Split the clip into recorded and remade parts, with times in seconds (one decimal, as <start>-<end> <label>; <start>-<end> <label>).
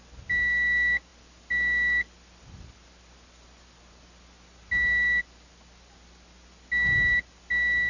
0.0-7.9 recorded